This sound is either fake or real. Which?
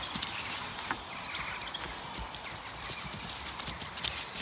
real